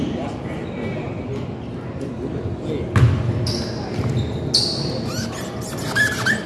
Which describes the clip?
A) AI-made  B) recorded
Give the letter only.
B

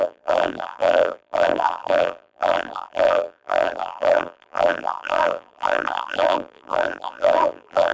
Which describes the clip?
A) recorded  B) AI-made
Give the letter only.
B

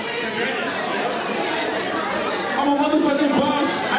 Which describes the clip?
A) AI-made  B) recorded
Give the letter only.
A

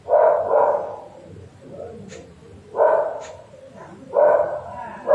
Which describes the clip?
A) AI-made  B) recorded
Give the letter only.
B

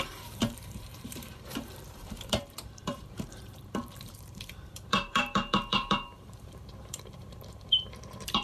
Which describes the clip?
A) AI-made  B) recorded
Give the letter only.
A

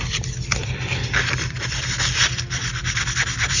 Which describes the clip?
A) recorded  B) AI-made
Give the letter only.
B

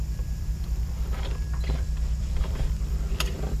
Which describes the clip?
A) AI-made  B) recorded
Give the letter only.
A